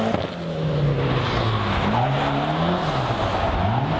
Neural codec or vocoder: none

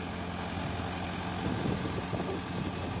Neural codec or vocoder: none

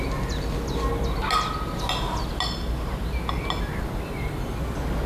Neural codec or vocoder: none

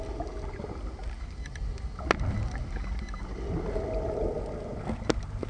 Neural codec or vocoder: none